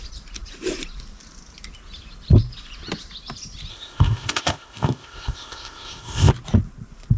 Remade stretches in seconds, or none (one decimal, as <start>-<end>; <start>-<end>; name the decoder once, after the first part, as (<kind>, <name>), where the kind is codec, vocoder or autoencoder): 3.7-6.3 (codec, ZipCodec)